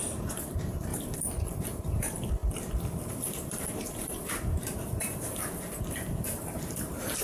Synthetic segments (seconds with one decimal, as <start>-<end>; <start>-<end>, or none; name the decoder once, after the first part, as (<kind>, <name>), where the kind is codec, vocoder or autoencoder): 0.0-7.2 (vocoder, BigVGAN v2)